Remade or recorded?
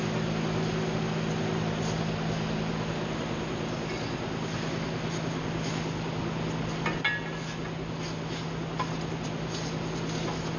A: recorded